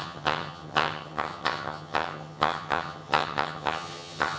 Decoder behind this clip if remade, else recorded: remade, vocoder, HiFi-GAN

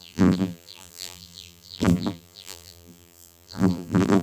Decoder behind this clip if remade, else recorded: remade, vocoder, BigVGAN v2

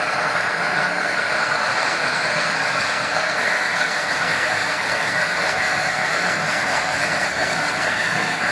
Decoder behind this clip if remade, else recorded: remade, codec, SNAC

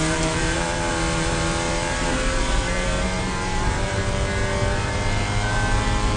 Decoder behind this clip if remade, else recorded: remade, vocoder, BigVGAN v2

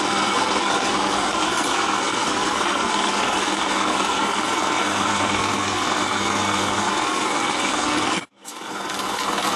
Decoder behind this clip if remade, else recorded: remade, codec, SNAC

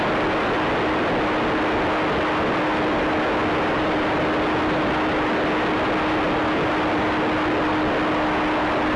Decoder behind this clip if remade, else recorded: recorded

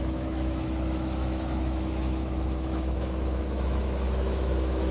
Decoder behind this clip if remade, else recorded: remade, autoencoder, DAC-VAE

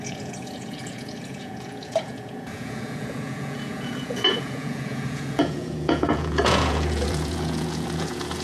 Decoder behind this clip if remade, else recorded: remade, vocoder, Vocos